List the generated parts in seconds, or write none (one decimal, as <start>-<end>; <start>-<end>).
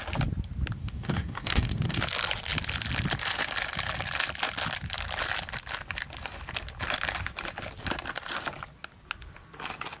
0.8-2.0